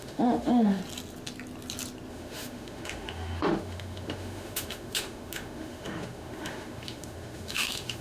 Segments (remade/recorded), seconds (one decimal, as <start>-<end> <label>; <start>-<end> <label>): 0.0-0.8 remade; 0.8-2.1 recorded; 2.1-8.0 remade